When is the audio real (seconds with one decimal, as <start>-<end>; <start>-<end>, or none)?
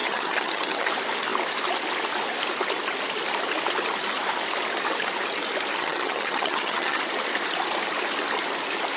0.9-5.7; 7.0-9.0